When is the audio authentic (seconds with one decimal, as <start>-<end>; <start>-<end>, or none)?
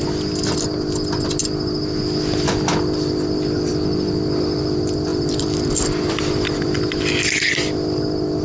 0.0-5.1; 7.0-8.4